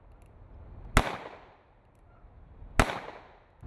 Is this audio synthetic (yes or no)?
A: no